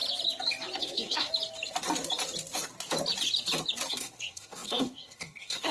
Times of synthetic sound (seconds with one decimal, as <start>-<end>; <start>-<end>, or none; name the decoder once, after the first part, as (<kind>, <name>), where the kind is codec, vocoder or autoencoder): 0.8-1.3 (codec, SNAC); 3.9-5.7